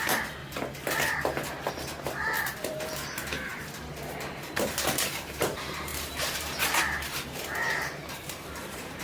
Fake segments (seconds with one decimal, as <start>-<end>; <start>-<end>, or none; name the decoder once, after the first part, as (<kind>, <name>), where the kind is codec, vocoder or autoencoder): 0.0-0.4 (vocoder, BigVGAN v2); 1.7-9.0